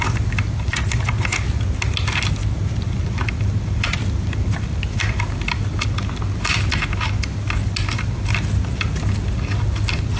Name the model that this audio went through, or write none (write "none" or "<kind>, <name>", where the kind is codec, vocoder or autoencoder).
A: none